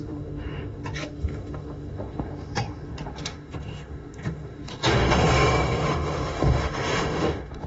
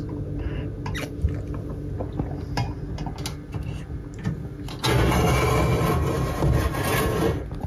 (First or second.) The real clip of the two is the second